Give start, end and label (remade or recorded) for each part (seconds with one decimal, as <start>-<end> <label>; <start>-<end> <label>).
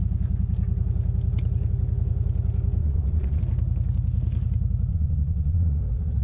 0.0-2.8 recorded; 2.8-3.4 remade; 3.4-4.9 recorded; 4.9-5.8 remade; 5.8-6.2 recorded